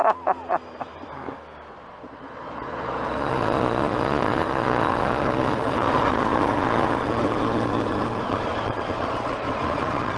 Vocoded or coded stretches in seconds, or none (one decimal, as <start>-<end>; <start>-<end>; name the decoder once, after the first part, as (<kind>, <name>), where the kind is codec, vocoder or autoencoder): 1.7-10.2 (vocoder, Vocos)